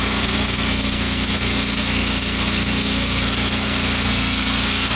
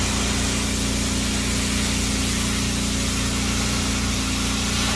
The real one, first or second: second